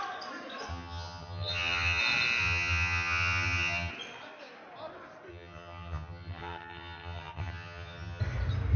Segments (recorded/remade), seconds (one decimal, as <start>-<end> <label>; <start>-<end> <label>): 0.0-0.7 recorded; 0.7-2.0 remade; 2.0-2.4 recorded; 2.4-3.9 remade; 3.9-5.3 recorded; 5.3-8.2 remade; 8.2-8.8 recorded